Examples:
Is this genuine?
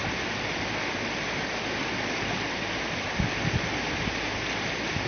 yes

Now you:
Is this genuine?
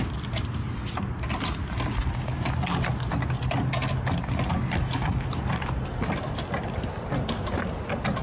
yes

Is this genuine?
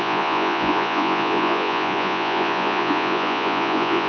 no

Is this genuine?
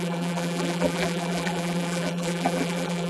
no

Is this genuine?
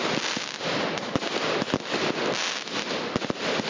yes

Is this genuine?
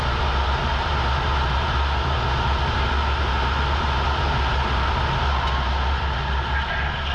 yes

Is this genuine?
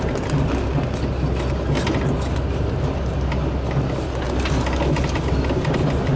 yes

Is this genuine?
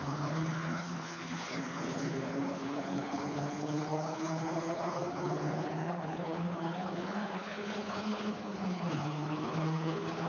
no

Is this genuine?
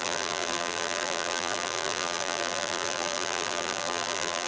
no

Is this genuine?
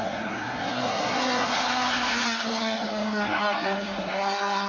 no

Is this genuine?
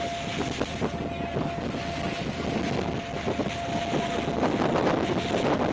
yes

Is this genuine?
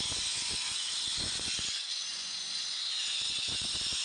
no